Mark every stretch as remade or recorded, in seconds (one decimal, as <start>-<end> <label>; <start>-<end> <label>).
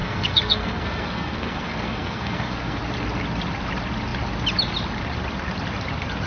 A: 0.0-2.8 remade; 2.8-6.3 recorded